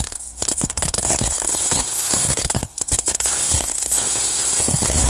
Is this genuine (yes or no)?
no